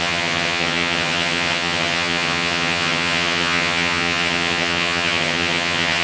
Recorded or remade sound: remade